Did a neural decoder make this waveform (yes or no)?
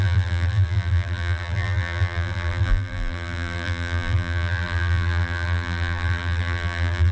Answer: yes